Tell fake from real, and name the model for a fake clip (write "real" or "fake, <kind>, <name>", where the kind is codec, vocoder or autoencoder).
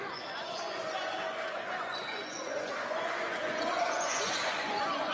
fake, vocoder, Vocos